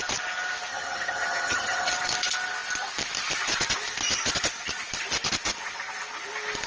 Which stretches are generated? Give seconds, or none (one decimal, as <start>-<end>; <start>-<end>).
0.7-1.9